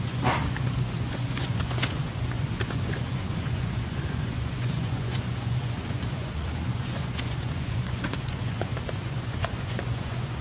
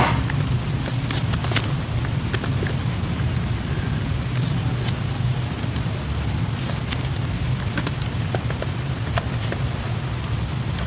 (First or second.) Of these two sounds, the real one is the second